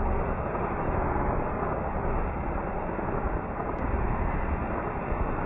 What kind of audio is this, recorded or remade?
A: recorded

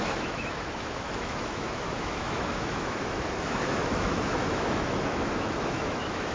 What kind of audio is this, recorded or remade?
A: remade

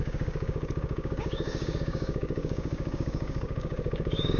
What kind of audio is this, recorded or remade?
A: remade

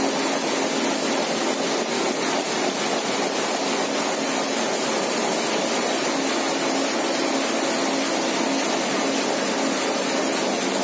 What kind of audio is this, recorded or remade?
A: recorded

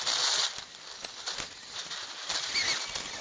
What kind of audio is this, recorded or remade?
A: recorded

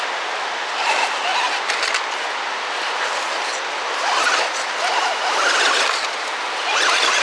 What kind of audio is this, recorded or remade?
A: recorded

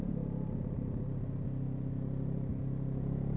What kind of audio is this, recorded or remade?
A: recorded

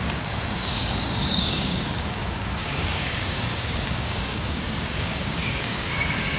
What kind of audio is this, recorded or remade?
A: remade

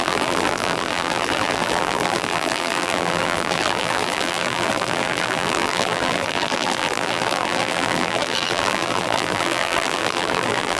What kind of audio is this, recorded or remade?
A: remade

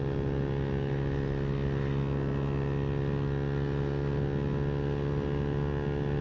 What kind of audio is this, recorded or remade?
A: recorded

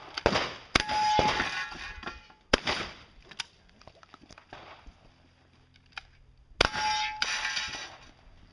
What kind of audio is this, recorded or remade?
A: recorded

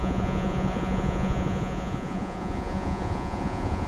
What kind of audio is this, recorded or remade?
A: remade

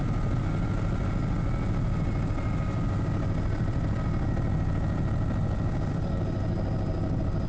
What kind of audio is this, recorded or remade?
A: recorded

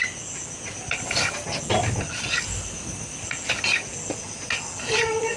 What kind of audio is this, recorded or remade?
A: recorded